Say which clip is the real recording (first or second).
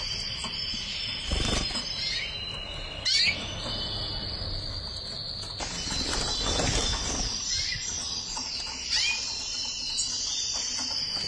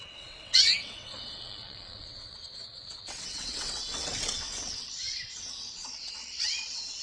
first